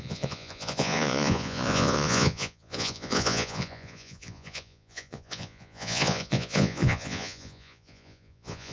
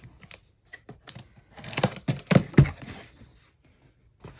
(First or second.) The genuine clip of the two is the second